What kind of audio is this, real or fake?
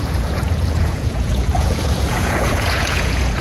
fake